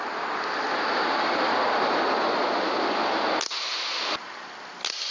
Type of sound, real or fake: real